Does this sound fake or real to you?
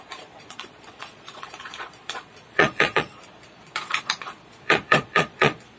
fake